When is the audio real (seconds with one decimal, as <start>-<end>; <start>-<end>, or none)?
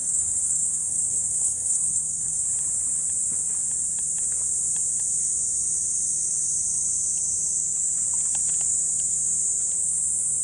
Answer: 2.4-10.4